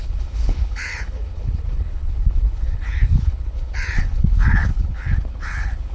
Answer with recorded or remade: remade